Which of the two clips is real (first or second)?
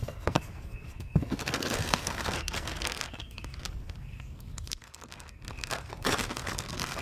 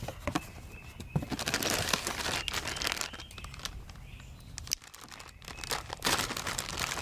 second